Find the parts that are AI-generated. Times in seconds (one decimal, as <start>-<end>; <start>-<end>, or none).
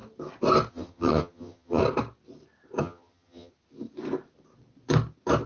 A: 0.7-1.8; 2.8-3.5